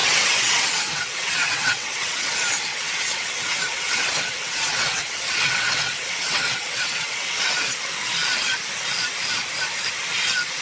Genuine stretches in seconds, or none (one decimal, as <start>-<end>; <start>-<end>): 2.2-2.7; 7.4-10.6

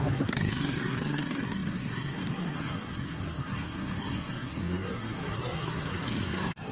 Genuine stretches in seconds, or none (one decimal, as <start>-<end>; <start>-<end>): none

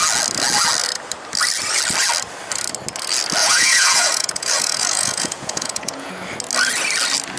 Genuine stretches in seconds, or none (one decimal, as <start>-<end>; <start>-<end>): 0.0-3.4; 6.1-7.4

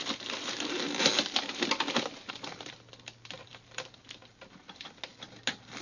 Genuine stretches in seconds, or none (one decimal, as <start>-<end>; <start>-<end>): 0.0-5.8

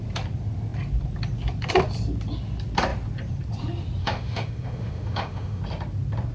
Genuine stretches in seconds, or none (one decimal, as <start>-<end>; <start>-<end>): 0.0-4.0; 5.6-6.3

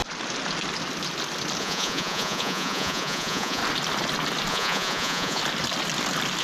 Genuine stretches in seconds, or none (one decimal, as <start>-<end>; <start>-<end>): 0.0-1.6; 3.6-4.5; 5.4-6.4

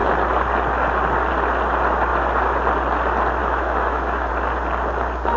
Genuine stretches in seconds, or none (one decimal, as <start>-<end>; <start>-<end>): 0.0-3.4; 4.3-5.4